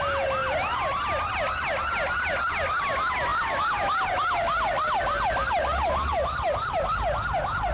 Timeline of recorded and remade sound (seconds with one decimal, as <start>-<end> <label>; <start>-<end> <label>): 0.0-7.7 recorded